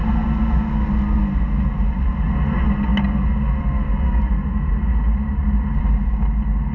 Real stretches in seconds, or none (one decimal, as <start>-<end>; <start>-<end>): 0.0-6.7